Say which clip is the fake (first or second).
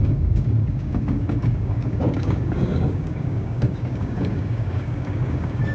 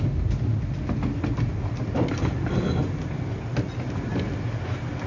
first